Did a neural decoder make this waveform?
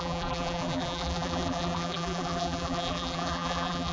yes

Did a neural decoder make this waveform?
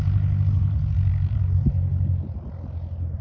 no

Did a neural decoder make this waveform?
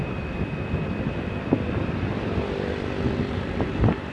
yes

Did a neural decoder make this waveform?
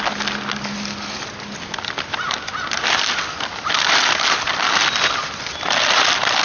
no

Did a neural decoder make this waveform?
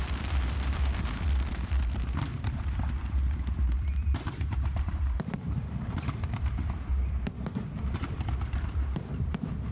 yes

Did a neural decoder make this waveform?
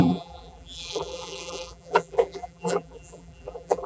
yes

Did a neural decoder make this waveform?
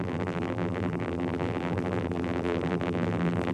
yes